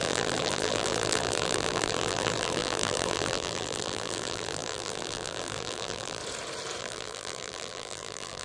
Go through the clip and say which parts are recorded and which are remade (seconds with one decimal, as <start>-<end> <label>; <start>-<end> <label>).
0.0-6.2 remade; 6.2-6.8 recorded; 6.8-8.4 remade